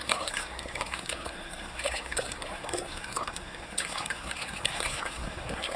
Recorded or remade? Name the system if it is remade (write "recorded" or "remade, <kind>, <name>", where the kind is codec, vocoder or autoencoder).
remade, codec, SNAC